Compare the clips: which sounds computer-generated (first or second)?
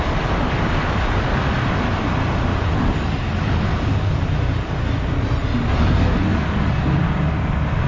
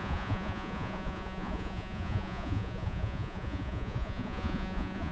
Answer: second